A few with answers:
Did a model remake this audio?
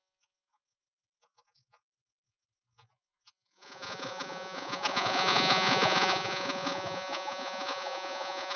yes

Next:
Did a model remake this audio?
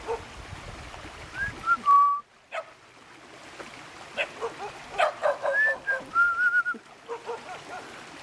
no